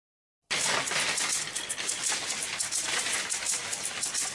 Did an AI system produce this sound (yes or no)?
no